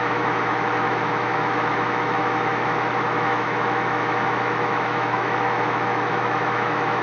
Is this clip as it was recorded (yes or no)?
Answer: no